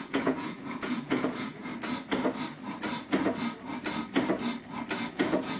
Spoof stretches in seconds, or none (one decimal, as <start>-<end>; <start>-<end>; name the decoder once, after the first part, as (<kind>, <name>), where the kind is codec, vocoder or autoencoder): 0.0-1.7 (vocoder, Vocos); 5.1-5.6